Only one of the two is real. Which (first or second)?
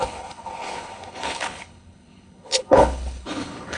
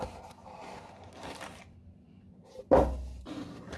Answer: second